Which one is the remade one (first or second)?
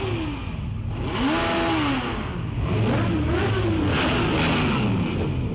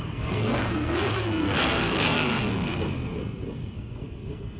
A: second